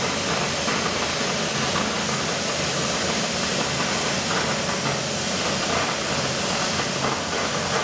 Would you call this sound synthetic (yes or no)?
no